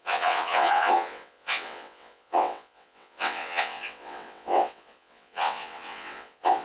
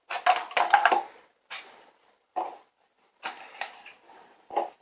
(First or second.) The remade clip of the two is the first